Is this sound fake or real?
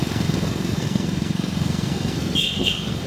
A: fake